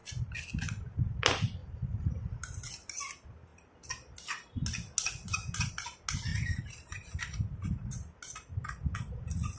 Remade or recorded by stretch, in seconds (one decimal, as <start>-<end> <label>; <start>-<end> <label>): 0.0-1.6 recorded; 1.6-2.1 remade; 2.1-6.3 recorded; 6.3-7.2 remade; 7.2-9.6 recorded